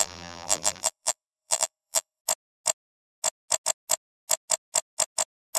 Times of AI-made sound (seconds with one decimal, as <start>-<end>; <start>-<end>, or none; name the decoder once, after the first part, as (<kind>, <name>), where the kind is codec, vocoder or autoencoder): 0.0-2.2 (vocoder, BigVGAN v2)